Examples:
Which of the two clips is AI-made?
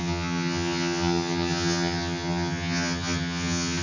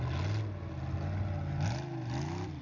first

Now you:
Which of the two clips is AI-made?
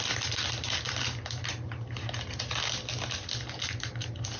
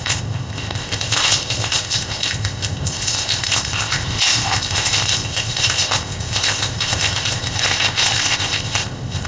second